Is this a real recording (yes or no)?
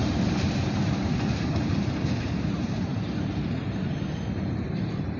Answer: no